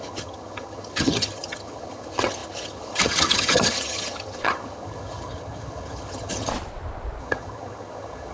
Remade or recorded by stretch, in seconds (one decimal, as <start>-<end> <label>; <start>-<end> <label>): 0.0-6.5 remade; 6.5-7.2 recorded; 7.2-8.3 remade

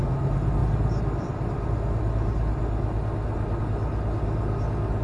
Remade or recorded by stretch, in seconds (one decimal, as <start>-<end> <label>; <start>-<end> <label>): 0.0-5.0 recorded

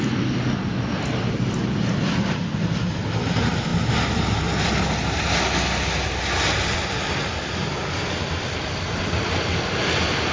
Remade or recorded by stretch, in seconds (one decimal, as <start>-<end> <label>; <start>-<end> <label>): 0.0-10.3 recorded

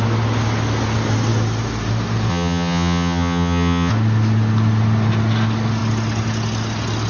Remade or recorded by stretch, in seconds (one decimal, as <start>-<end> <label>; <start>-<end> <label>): 0.0-2.3 recorded; 2.3-3.9 remade; 3.9-7.1 recorded

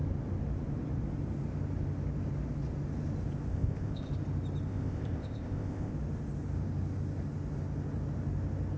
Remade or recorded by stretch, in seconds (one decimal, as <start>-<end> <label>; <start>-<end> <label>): 0.0-3.5 recorded; 3.5-4.1 remade; 4.1-4.7 recorded; 4.7-5.9 remade; 5.9-8.8 recorded

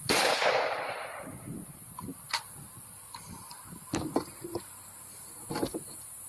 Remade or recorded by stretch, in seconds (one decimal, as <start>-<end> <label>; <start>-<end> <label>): 0.0-2.1 recorded; 2.1-5.1 remade; 5.1-6.3 recorded

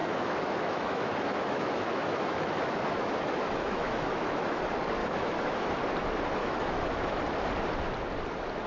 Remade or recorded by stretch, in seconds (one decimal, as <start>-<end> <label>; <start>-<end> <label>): 0.0-4.6 remade; 4.6-5.0 recorded; 5.0-5.7 remade; 5.7-6.4 recorded; 6.4-7.2 remade; 7.2-8.7 recorded